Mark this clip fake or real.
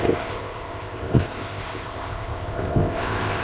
fake